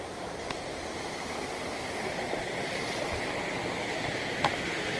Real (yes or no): yes